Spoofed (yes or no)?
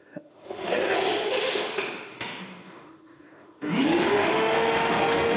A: yes